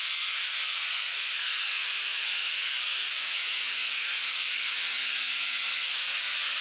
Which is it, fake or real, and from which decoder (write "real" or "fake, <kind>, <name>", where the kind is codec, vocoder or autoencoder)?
fake, codec, SNAC